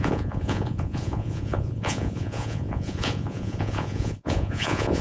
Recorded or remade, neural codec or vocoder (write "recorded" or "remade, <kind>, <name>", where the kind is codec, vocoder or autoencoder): remade, vocoder, Vocos